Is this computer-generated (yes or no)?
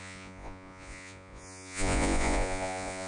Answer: yes